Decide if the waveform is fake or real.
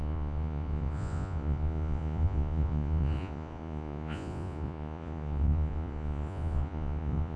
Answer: fake